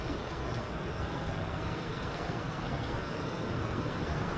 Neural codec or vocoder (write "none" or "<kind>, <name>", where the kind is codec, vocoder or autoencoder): codec, SNAC